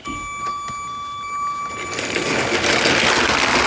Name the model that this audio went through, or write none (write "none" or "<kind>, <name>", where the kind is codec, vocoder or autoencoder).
none